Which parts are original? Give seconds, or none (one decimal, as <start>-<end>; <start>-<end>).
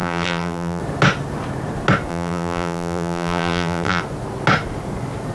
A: 0.8-2.1; 4.0-5.3